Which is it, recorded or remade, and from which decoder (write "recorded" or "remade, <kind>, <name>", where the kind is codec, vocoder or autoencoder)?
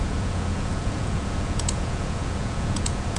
remade, vocoder, Vocos